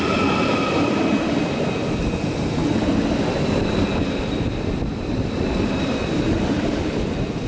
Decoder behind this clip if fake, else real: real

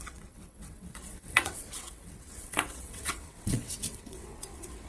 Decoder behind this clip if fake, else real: fake, vocoder, WaveNeXt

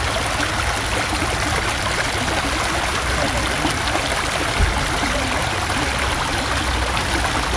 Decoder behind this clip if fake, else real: real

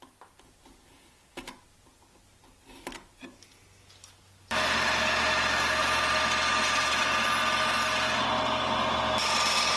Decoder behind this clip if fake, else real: real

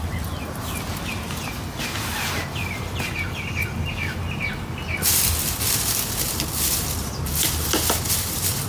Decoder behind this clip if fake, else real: real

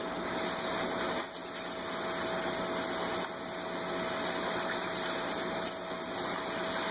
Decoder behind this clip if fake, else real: real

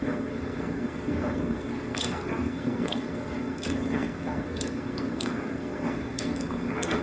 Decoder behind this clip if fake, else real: fake, codec, SNAC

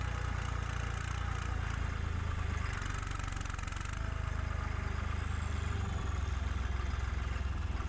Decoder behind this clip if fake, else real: real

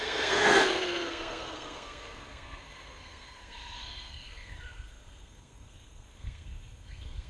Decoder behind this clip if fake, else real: fake, codec, SNAC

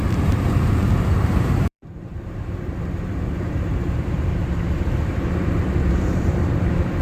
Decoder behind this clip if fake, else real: fake, vocoder, BigVGAN v2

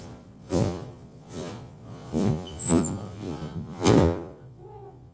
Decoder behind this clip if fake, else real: fake, vocoder, Vocos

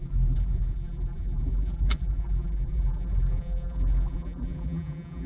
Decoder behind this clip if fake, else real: fake, vocoder, BigVGAN v2